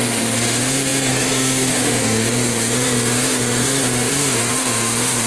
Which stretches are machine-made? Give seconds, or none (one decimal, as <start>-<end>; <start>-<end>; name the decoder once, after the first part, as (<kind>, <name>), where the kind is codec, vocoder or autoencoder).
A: 0.0-5.3 (autoencoder, DAC-VAE)